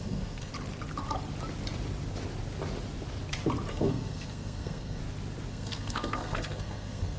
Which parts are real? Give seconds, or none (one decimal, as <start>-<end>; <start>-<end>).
0.5-3.7; 5.0-5.5